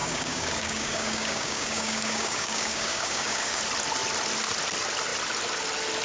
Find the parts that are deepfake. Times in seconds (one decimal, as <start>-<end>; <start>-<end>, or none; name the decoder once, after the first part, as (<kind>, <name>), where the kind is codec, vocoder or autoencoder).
0.0-3.6 (codec, DAC)